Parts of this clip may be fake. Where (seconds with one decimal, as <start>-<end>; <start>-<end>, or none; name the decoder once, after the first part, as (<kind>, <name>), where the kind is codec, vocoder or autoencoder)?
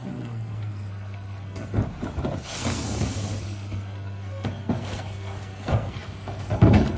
0.0-1.8 (codec, SNAC); 2.4-7.0